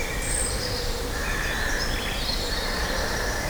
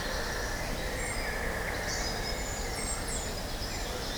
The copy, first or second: first